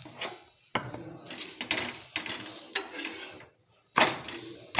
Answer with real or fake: real